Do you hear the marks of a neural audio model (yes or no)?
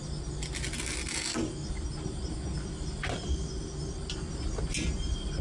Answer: no